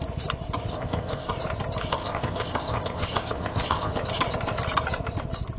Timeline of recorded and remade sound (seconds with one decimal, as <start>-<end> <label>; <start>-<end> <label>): 0.0-0.7 recorded; 0.7-1.3 remade; 1.3-1.9 recorded; 1.9-3.9 remade; 3.9-5.6 recorded